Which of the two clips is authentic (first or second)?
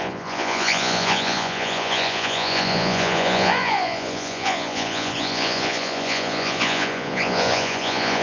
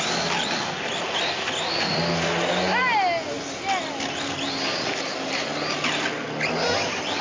second